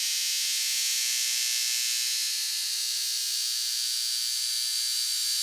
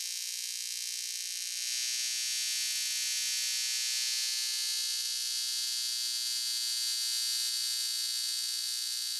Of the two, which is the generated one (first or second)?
first